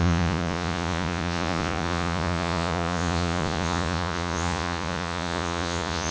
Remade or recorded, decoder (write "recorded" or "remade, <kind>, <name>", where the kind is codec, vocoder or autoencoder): remade, vocoder, Vocos